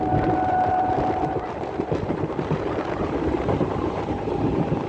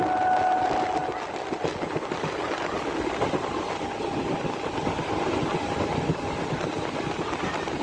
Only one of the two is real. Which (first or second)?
second